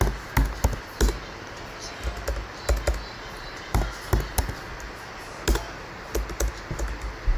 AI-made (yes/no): no